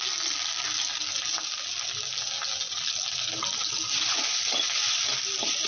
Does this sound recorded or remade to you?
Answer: recorded